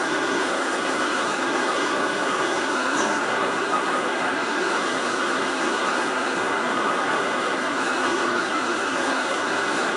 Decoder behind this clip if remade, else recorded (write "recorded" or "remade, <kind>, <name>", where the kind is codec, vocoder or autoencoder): remade, codec, SNAC